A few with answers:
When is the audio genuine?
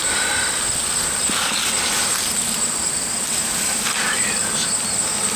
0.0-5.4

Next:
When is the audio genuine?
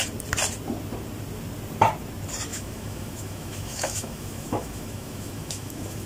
0.0-2.5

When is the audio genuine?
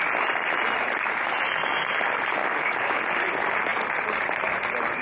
0.0-2.4; 3.0-5.0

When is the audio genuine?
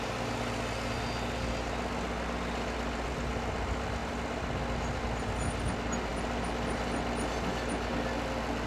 0.0-8.7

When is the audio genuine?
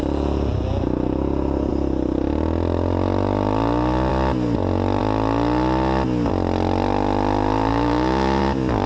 0.0-7.7; 8.4-8.9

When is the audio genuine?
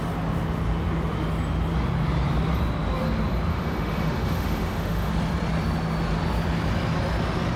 0.0-3.5; 5.1-7.6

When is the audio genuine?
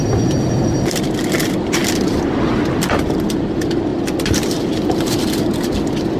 0.0-6.2